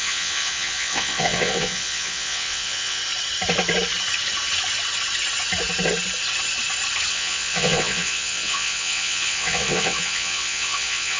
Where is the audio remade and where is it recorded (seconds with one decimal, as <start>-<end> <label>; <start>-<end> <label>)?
0.0-3.0 remade; 3.0-7.1 recorded; 7.1-11.2 remade